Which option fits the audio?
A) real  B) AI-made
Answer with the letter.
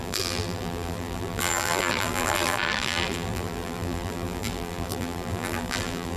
B